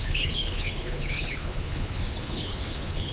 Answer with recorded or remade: remade